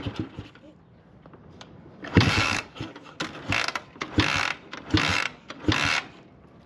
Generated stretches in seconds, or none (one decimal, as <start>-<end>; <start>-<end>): 1.4-3.1; 5.1-5.6

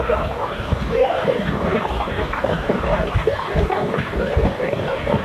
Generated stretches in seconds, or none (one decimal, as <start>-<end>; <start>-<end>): 0.0-5.2

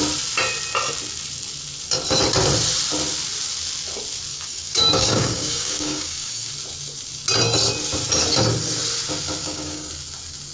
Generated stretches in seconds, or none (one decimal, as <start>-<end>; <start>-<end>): 4.3-6.5; 9.4-9.9

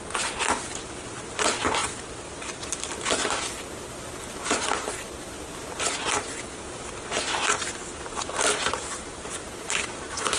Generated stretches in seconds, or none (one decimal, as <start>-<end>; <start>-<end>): none